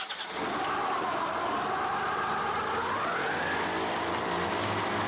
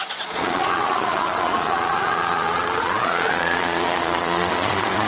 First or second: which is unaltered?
first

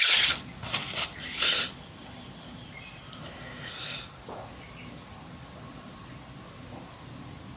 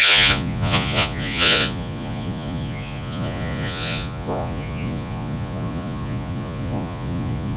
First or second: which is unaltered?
first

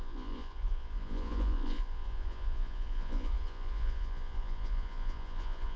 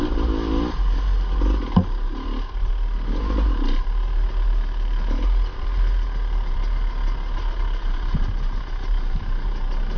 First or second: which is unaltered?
second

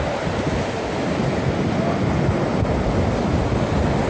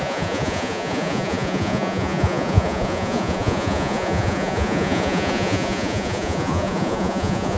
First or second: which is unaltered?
first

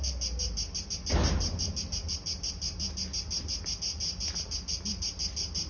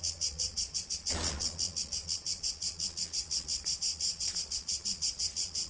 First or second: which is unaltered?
first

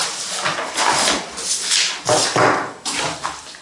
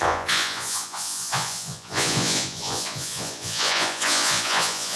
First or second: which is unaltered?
first